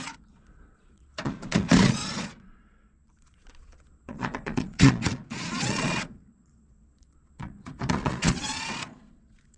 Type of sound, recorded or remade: remade